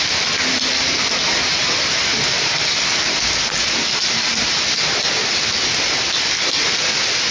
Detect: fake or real real